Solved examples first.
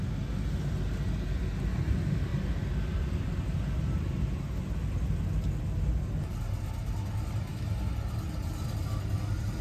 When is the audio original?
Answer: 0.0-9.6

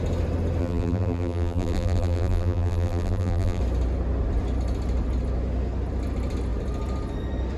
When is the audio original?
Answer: 0.0-0.6; 3.6-7.6

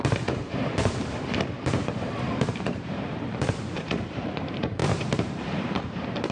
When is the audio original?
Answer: none

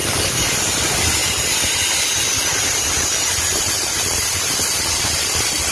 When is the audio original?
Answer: 0.0-0.7; 1.2-4.2

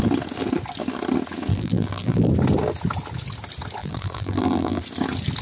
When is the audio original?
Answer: 0.0-1.5; 2.3-3.8; 4.8-5.4

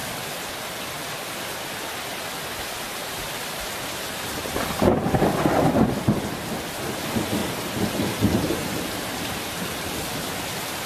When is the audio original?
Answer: 0.0-3.0; 4.6-7.4; 9.1-10.9